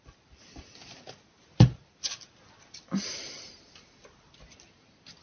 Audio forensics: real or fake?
fake